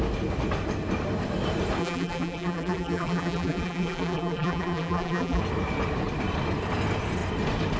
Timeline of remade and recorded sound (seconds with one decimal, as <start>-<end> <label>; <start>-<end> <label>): 0.0-1.8 recorded; 1.8-5.4 remade; 5.4-7.8 recorded